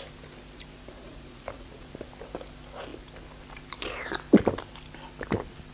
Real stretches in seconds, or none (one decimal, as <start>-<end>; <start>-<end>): 0.0-1.0; 1.9-5.7